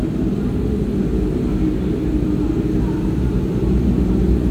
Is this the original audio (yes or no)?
no